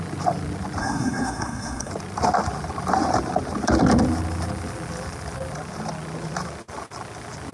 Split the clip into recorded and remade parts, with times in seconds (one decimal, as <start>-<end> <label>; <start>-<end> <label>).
0.0-0.8 recorded; 0.8-1.9 remade; 1.9-7.5 recorded